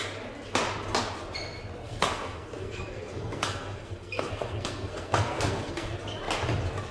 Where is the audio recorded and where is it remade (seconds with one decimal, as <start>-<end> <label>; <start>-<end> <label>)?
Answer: 0.0-1.8 recorded; 1.8-5.9 remade; 5.9-6.9 recorded